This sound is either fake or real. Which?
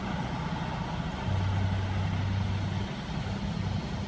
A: real